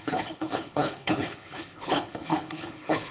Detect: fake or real fake